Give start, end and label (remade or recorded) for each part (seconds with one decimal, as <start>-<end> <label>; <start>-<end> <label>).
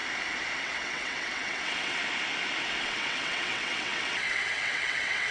0.0-0.6 recorded; 0.6-2.0 remade; 2.0-2.8 recorded; 2.8-5.3 remade